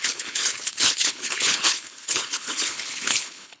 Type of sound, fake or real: fake